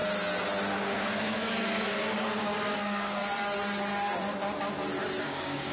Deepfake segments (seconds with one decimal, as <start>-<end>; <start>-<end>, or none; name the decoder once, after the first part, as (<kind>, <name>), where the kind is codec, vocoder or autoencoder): 0.7-3.2 (codec, DAC); 5.2-5.7

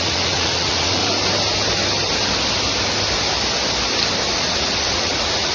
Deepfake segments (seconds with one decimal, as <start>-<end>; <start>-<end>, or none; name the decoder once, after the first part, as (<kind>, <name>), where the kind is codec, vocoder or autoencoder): 0.0-1.0 (vocoder, Vocos); 4.3-5.5

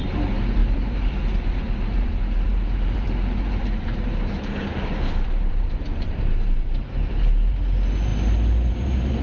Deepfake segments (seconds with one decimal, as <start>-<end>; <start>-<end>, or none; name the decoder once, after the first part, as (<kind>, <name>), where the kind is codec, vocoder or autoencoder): 0.0-8.1 (vocoder, BigVGAN v2); 8.7-9.2

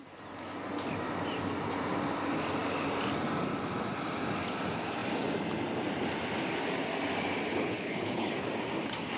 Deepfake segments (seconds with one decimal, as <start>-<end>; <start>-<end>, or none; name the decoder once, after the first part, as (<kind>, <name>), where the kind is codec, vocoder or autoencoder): 7.5-8.5 (codec, HILCodec)

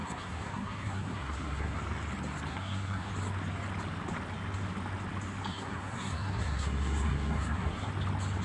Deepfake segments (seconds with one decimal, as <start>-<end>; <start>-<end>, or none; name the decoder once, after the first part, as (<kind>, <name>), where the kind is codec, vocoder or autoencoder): 0.0-1.8 (codec, SNAC); 2.5-3.1; 5.5-7.9

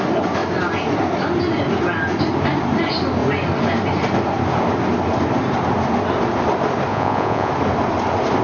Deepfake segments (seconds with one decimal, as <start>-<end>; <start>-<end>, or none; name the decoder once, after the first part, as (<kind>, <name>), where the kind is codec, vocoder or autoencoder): 6.9-7.5 (vocoder, Vocos)

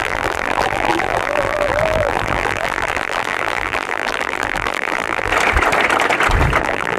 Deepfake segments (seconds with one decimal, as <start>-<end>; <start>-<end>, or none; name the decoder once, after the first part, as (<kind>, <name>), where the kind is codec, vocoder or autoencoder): 0.0-5.3 (vocoder, BigVGAN v2); 6.6-7.0